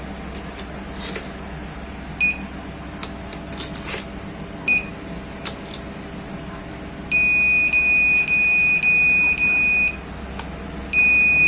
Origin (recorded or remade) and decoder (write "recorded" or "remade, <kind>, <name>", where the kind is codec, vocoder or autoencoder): recorded